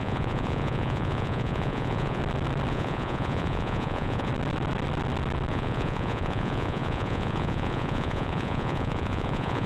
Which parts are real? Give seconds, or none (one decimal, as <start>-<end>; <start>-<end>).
2.2-2.7; 4.3-5.5